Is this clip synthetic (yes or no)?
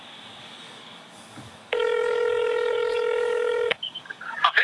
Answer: yes